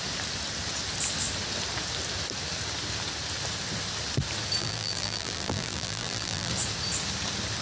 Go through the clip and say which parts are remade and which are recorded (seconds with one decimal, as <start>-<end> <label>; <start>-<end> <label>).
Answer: 0.0-4.6 recorded; 4.6-6.5 remade; 6.5-7.6 recorded